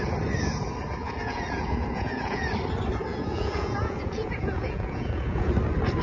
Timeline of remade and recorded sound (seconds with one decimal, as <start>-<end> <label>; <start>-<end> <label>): 0.0-1.0 recorded; 1.0-2.5 remade; 2.5-3.1 recorded; 3.1-5.5 remade; 5.5-6.0 recorded